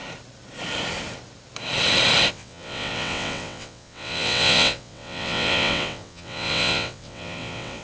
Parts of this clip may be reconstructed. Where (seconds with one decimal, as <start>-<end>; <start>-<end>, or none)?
2.3-7.8